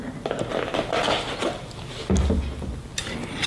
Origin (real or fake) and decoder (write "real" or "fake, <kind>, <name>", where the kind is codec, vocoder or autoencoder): real